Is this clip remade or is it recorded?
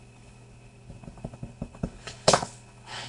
remade